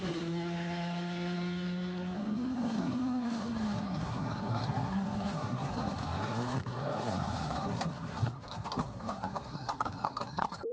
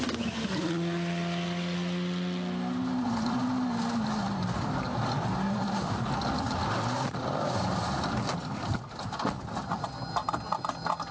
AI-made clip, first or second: first